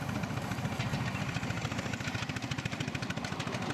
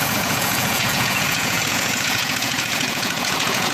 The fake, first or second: second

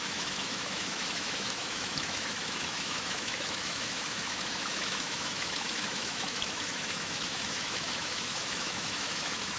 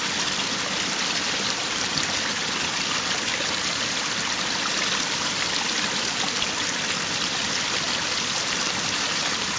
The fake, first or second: first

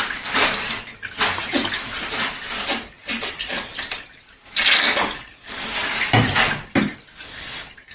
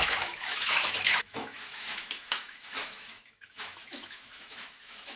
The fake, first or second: second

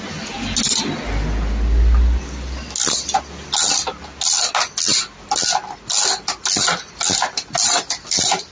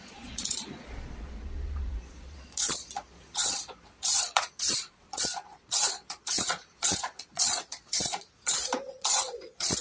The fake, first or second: second